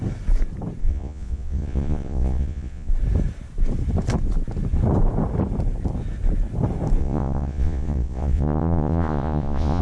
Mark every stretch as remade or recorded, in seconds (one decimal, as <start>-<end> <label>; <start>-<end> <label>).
0.0-0.8 recorded; 0.8-2.9 remade; 2.9-7.0 recorded; 7.0-9.8 remade